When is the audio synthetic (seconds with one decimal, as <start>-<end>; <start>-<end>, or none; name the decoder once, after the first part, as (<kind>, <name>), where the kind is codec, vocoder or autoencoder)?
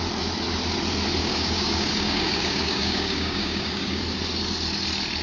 1.2-4.0 (codec, DAC)